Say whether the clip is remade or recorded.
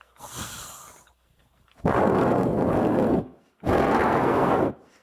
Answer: remade